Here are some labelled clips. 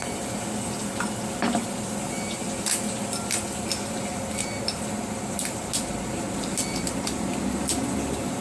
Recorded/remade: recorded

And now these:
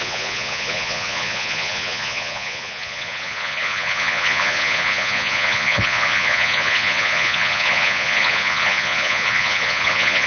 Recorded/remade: remade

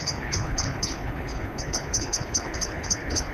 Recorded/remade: remade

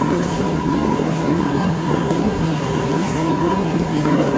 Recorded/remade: remade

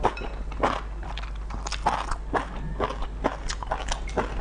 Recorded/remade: recorded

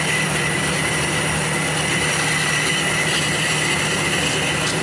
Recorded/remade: recorded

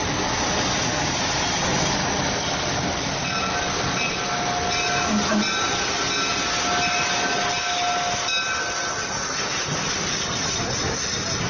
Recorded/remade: recorded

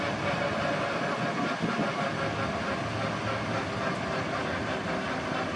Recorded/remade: recorded